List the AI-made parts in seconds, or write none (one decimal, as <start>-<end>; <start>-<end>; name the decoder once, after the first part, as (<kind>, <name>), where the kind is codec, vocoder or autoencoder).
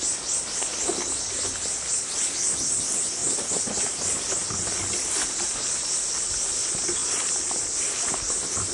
none